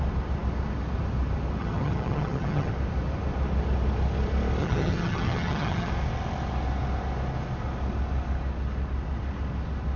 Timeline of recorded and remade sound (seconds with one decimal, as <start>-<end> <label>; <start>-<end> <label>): 0.0-1.6 recorded; 1.6-2.7 remade; 2.7-4.6 recorded; 4.6-5.9 remade; 5.9-10.0 recorded